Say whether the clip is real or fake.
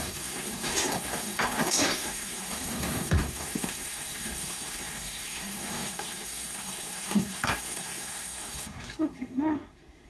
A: fake